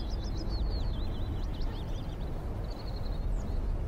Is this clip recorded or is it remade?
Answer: recorded